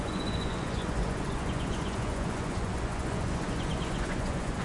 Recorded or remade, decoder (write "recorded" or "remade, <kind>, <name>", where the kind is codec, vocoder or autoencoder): remade, vocoder, Vocos